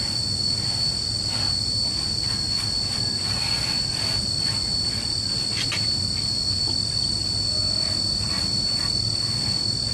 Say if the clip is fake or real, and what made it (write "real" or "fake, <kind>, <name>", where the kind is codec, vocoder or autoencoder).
real